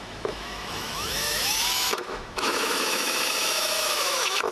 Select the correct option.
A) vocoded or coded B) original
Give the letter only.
A